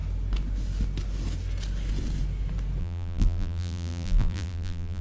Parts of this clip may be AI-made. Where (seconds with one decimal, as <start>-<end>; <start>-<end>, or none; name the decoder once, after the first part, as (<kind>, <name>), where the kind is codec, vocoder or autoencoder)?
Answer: 2.8-5.0 (vocoder, BigVGAN v2)